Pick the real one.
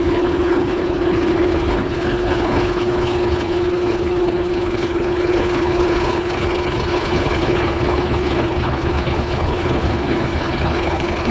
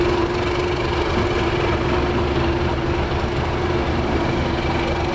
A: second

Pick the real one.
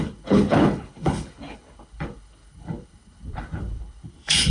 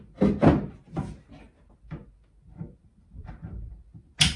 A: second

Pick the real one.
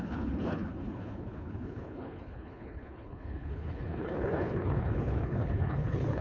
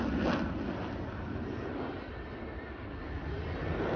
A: second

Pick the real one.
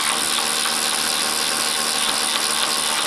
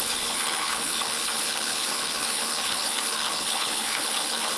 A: first